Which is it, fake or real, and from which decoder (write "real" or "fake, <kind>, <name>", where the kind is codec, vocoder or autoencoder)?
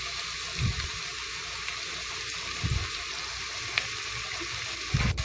real